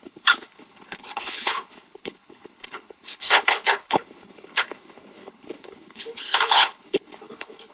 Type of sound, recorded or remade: remade